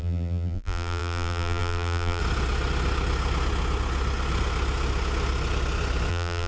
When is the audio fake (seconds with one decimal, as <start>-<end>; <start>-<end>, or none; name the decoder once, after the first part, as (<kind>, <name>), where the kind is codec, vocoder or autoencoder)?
0.0-2.2 (vocoder, BigVGAN v2); 6.1-6.5